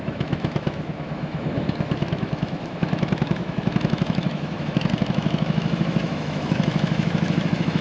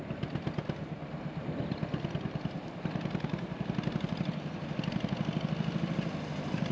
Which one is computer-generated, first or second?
first